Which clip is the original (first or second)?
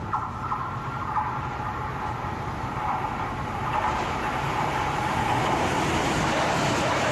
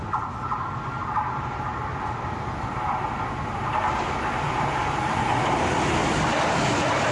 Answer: second